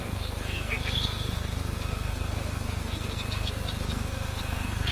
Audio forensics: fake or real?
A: fake